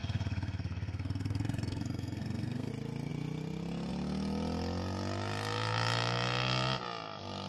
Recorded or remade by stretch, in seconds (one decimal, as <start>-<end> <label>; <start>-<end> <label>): 0.0-2.7 remade; 2.7-7.5 recorded